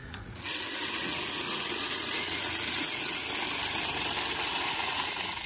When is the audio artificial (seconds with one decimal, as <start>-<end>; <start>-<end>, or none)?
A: 0.0-3.2; 4.7-5.5